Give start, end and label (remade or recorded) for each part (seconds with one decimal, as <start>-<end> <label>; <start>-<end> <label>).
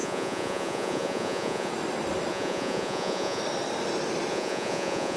0.0-1.7 remade; 1.7-2.3 recorded; 2.3-3.4 remade; 3.4-4.3 recorded; 4.3-5.2 remade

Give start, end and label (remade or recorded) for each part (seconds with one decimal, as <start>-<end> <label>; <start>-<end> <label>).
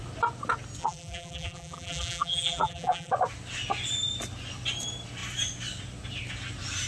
0.0-0.8 recorded; 0.8-3.1 remade; 3.1-6.9 recorded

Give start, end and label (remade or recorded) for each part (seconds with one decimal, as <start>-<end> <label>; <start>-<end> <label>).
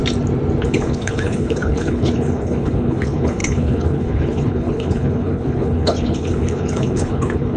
0.0-0.6 recorded; 0.6-7.6 remade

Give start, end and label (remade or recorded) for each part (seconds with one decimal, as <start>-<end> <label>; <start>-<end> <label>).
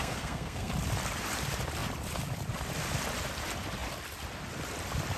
0.0-0.7 remade; 0.7-5.2 recorded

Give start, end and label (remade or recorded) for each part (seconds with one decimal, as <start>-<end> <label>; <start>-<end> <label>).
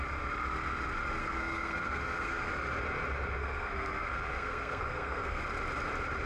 0.0-1.2 recorded; 1.2-2.5 remade; 2.5-3.4 recorded; 3.4-5.4 remade; 5.4-6.3 recorded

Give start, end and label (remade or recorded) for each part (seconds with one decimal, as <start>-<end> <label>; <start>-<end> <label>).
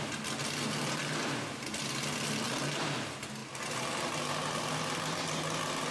0.0-5.9 recorded